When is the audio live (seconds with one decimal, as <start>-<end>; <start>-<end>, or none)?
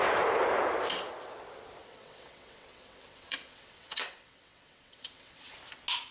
0.0-1.8; 5.5-6.1